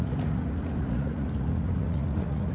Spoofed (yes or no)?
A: yes